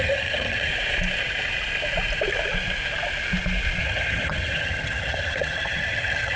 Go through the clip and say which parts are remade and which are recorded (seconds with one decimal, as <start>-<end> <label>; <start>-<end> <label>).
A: 0.0-0.7 remade; 0.7-3.8 recorded; 3.8-6.4 remade